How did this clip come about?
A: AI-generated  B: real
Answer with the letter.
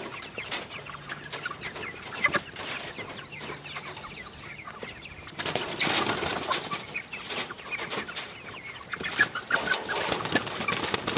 B